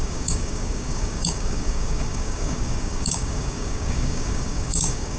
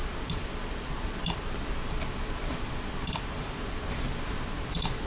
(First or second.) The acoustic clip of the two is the second